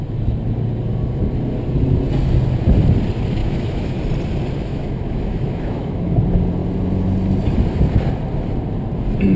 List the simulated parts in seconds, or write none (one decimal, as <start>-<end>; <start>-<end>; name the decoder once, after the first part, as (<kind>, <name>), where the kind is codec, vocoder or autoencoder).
3.4-4.0 (autoencoder, DAC-VAE); 4.7-6.1